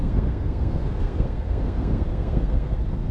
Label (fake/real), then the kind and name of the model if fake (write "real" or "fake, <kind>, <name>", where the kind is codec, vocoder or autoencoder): fake, codec, SNAC